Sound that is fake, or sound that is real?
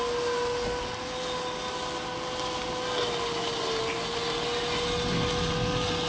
real